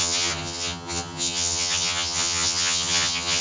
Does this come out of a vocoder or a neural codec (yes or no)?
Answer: yes